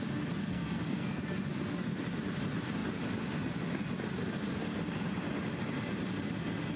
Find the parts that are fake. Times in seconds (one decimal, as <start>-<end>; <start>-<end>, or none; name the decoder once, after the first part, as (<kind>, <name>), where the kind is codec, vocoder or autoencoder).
0.4-1.2 (codec, SNAC)